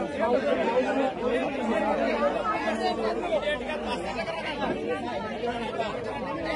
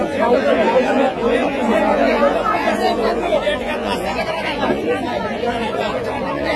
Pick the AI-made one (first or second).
second